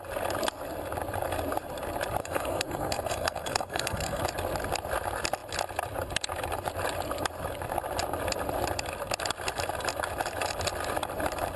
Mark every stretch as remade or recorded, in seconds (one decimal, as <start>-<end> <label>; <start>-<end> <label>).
0.0-2.2 recorded; 2.2-4.2 remade; 4.2-11.6 recorded